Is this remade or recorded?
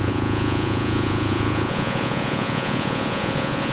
remade